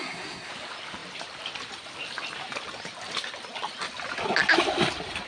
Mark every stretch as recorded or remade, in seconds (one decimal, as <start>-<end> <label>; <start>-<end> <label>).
0.0-0.5 remade; 0.5-5.3 recorded